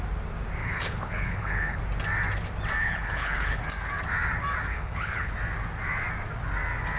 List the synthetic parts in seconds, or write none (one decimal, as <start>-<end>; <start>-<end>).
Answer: 0.6-1.8; 2.8-3.6; 4.7-5.3